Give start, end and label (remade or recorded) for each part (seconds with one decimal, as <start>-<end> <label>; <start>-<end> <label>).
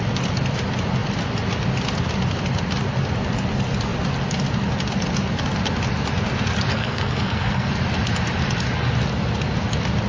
0.0-6.7 recorded; 6.7-7.7 remade; 7.7-10.1 recorded